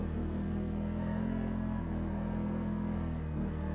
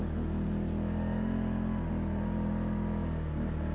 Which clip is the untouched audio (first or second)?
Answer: second